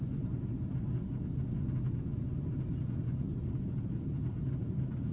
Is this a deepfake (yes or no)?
no